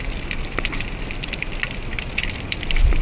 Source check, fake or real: fake